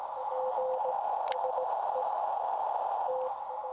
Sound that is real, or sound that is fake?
real